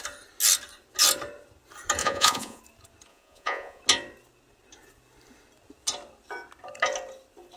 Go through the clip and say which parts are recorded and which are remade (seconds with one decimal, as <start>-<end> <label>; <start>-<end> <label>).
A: 0.0-2.0 recorded; 2.0-2.6 remade; 2.6-3.1 recorded; 3.1-3.8 remade; 3.8-7.6 recorded